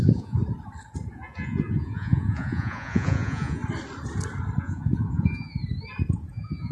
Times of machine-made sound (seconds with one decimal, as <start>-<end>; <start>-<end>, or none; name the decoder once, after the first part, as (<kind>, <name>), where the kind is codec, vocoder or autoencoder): 0.0-0.4 (vocoder, Vocos); 1.1-3.6; 4.6-5.6; 6.3-6.7